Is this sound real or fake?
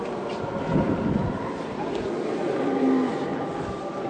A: real